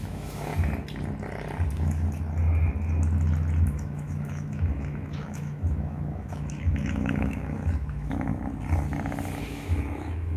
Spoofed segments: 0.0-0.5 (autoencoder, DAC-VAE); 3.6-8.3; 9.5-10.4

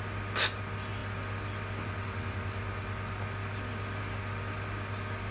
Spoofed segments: none

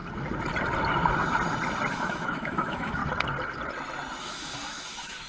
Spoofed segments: 1.9-3.0 (autoencoder, DAC-VAE); 4.2-5.3

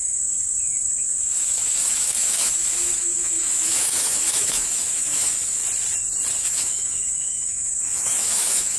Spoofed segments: 0.0-5.6 (autoencoder, DAC-VAE); 6.4-8.8